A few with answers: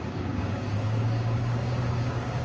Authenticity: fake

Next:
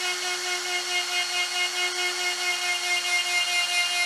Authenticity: real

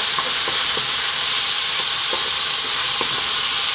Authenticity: real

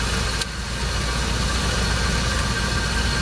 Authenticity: real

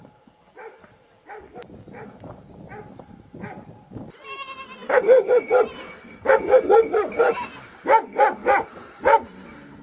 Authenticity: real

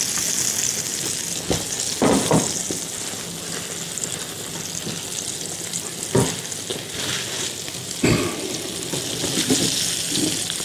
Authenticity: real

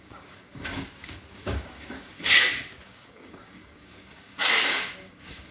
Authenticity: fake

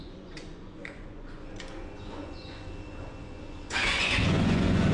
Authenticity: fake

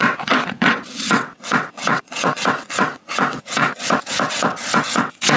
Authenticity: fake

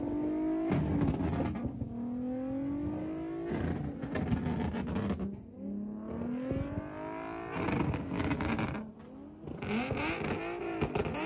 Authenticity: real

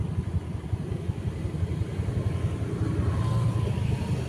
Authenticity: real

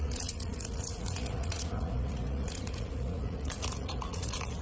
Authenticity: fake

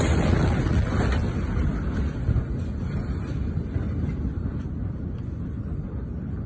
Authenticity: real